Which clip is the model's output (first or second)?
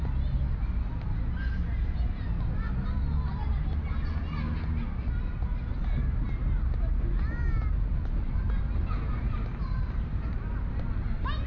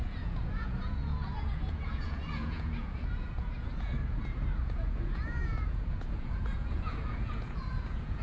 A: second